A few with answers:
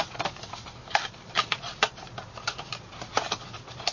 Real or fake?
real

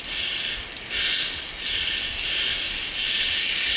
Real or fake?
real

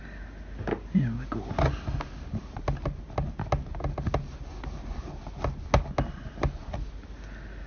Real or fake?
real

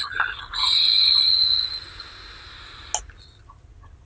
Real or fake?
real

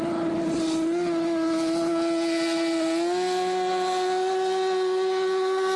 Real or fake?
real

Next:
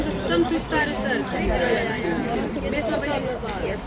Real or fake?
fake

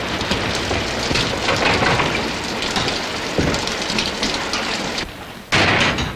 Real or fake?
real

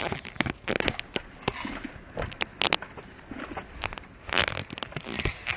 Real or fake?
real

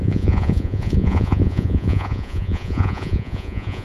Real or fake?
fake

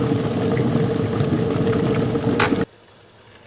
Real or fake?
real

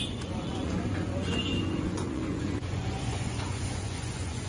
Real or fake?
fake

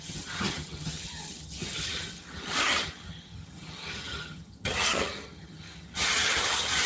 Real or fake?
fake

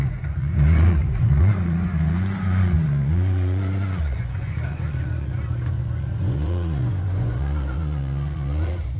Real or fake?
fake